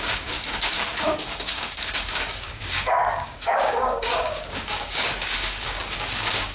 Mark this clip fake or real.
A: fake